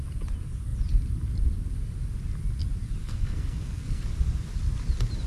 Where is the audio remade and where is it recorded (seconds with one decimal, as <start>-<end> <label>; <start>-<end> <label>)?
0.0-3.0 recorded; 3.0-4.0 remade; 4.0-5.3 recorded